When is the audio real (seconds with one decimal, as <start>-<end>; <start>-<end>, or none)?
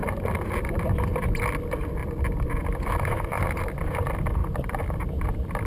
0.0-2.0; 3.7-4.4; 5.3-5.7